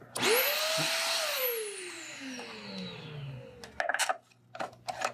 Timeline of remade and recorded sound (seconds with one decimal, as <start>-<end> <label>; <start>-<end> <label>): 0.0-5.1 recorded